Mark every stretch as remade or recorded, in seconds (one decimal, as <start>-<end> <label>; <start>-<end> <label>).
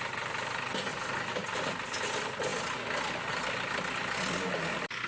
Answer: 0.0-5.1 recorded